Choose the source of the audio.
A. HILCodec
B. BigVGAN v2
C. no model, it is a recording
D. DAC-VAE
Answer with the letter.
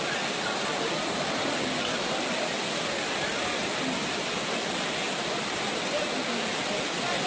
C